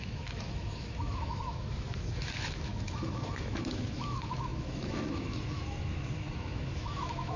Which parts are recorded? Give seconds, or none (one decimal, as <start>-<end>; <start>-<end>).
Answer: none